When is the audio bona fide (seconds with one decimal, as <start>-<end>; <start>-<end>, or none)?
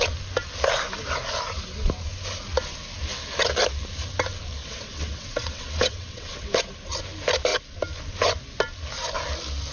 0.0-4.6; 6.5-9.7